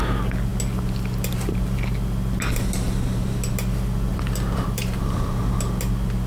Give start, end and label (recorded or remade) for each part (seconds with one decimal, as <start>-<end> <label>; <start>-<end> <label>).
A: 0.0-4.1 recorded; 4.1-5.4 remade; 5.4-6.3 recorded